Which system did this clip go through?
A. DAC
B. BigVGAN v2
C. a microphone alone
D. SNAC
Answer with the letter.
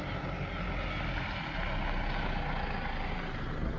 C